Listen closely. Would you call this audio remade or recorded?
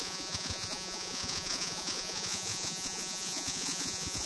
remade